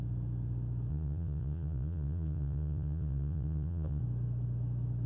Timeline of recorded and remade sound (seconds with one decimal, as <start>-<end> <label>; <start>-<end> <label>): 0.0-0.9 recorded; 0.9-4.0 remade; 4.0-5.1 recorded